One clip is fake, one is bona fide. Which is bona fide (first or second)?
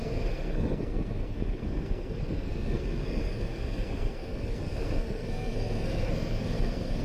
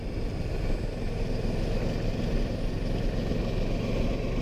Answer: second